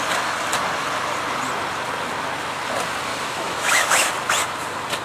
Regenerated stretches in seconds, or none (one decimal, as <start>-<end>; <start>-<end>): 3.1-4.1